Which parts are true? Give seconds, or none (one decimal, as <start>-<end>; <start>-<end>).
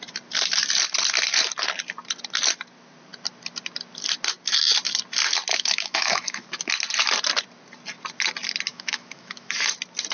0.0-5.5; 6.7-8.7; 9.5-10.1